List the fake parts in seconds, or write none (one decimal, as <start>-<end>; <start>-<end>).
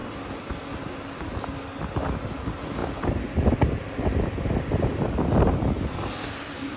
none